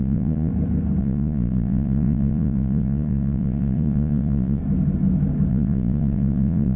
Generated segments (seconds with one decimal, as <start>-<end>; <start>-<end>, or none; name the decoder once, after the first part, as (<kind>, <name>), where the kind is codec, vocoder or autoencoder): 0.0-0.5 (vocoder, Vocos); 1.0-4.6; 5.5-6.8